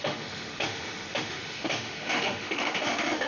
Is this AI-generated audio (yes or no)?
yes